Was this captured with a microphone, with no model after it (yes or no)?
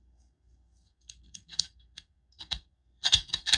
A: no